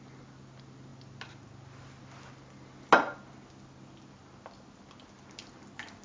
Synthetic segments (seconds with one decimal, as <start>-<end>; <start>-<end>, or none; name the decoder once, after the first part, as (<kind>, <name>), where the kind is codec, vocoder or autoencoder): none